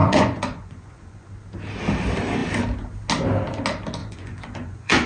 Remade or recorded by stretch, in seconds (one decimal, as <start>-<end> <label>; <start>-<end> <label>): 0.0-1.3 remade; 1.3-4.0 recorded; 4.0-5.1 remade